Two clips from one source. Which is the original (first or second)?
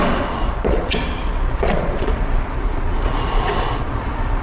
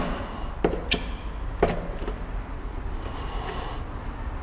second